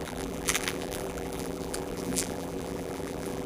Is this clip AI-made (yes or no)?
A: yes